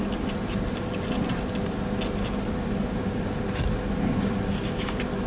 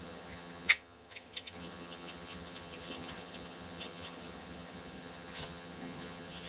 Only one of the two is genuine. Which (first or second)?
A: first